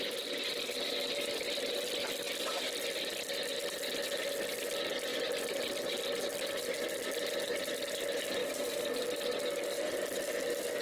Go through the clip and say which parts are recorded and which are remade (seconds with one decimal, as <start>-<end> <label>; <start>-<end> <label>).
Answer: 0.0-10.8 recorded